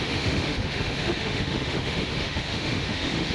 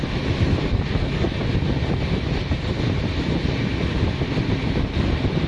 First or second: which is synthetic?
first